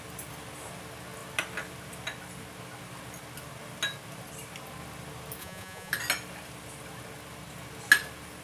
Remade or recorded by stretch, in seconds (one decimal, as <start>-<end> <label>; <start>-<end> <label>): 0.0-5.4 recorded; 5.4-5.9 remade; 5.9-8.4 recorded